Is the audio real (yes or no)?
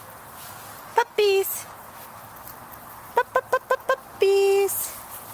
yes